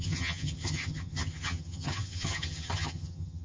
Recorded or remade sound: remade